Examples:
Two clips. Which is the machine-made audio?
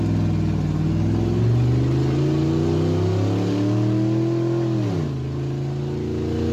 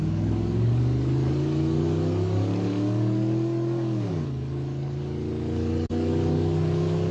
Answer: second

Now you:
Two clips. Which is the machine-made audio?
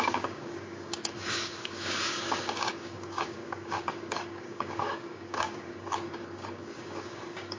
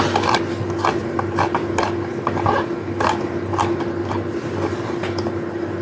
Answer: first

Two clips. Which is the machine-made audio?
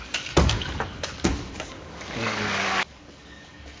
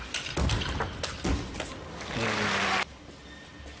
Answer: first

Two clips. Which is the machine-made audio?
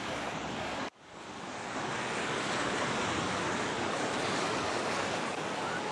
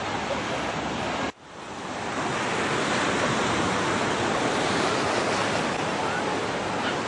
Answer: first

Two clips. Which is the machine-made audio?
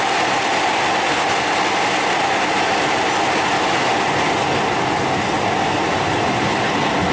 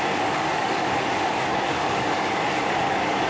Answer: second